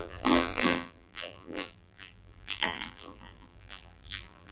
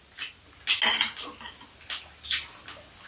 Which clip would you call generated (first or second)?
first